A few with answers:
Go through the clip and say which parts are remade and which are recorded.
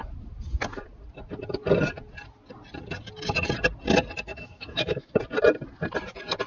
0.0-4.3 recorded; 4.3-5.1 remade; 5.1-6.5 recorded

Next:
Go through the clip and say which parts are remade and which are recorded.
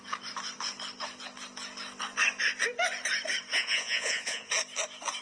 0.0-3.5 recorded; 3.5-4.5 remade; 4.5-5.2 recorded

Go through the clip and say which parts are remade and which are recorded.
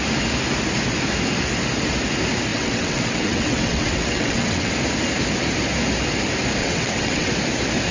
0.0-2.5 recorded; 2.5-4.7 remade; 4.7-6.6 recorded; 6.6-7.3 remade; 7.3-7.9 recorded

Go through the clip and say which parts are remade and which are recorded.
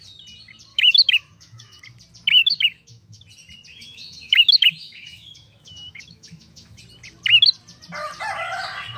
0.0-0.7 recorded; 0.7-1.8 remade; 1.8-2.4 recorded; 2.4-3.2 remade; 3.2-3.7 recorded; 3.7-6.8 remade; 6.8-9.0 recorded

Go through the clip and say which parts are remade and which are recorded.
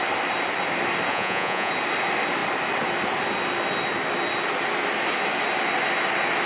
0.0-1.1 recorded; 1.1-1.7 remade; 1.7-6.5 recorded